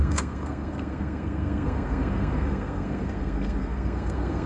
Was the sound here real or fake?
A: fake